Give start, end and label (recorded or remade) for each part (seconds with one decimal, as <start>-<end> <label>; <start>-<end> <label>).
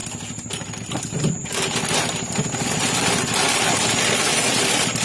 0.0-5.0 recorded